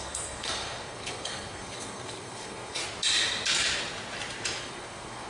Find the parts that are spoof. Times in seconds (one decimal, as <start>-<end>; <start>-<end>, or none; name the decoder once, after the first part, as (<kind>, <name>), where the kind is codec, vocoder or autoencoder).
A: 0.0-2.8 (codec, SNAC); 4.6-5.3